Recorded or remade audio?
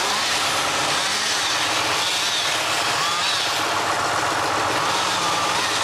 recorded